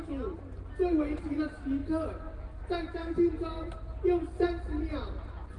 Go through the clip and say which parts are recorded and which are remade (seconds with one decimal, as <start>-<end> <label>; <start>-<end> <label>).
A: 0.0-5.6 recorded